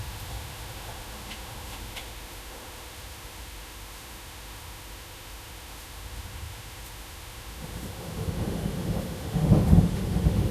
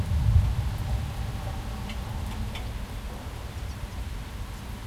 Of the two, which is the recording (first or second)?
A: second